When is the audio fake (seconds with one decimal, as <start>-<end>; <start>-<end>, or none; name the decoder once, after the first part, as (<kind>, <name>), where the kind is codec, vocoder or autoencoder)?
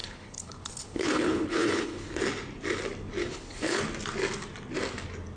0.0-2.2 (codec, HILCodec); 3.2-3.8